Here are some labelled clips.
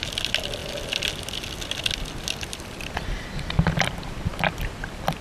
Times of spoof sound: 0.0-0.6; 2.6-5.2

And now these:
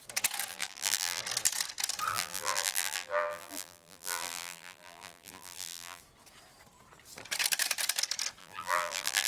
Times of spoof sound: 0.5-1.2; 2.1-6.0; 8.4-9.3

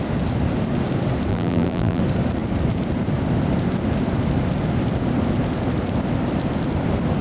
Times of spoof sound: 1.3-2.0